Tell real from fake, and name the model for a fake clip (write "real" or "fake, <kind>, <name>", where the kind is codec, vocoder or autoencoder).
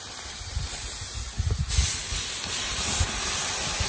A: real